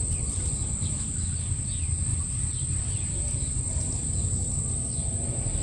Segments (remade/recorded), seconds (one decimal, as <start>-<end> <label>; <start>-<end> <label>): 0.0-1.0 remade; 1.0-2.1 recorded; 2.1-3.8 remade; 3.8-5.6 recorded